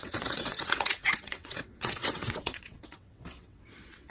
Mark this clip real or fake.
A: fake